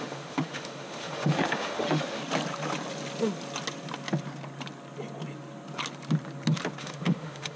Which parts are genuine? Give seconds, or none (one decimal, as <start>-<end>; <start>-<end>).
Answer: 2.2-6.8